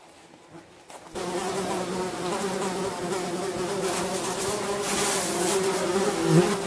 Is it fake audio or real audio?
real